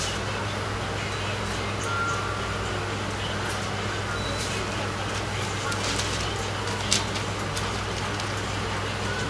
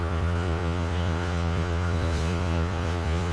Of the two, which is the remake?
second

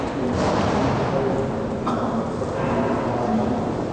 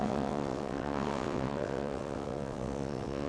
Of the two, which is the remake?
second